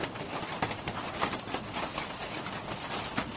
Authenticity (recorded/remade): recorded